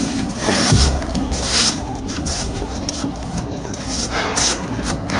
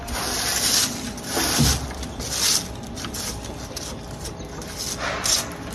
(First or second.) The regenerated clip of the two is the first